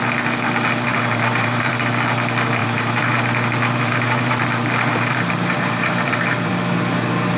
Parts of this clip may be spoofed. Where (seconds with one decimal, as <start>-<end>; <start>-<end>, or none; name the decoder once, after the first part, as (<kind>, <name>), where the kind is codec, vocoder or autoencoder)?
0.9-1.7 (vocoder, BigVGAN v2); 2.6-6.5